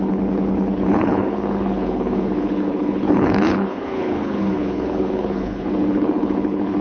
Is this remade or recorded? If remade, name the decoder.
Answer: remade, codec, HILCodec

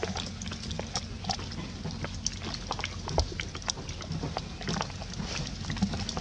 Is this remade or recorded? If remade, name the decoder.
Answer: recorded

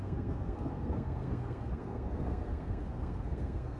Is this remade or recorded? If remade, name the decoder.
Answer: remade, codec, SNAC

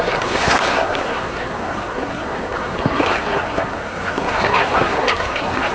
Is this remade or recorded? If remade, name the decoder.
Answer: remade, codec, SNAC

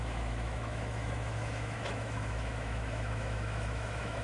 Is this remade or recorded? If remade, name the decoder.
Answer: remade, autoencoder, DAC-VAE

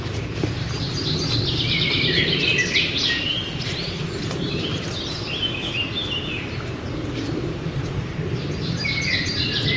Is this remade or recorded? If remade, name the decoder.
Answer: remade, vocoder, BigVGAN v2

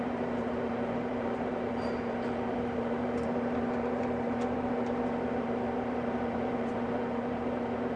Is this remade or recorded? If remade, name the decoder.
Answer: remade, vocoder, BigVGAN v2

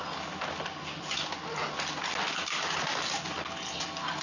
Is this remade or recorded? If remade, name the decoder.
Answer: recorded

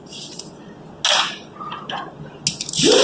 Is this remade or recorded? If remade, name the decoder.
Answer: recorded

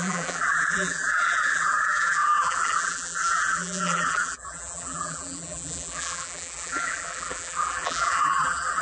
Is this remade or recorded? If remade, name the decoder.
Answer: remade, vocoder, BigVGAN v2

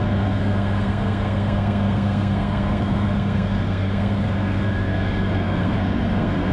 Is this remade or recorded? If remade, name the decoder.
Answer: remade, codec, SNAC